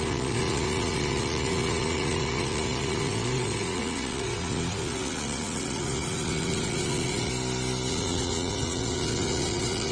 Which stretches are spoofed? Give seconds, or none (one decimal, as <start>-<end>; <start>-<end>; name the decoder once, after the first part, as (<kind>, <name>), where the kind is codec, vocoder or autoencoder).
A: 0.0-7.3 (vocoder, Vocos); 7.9-9.9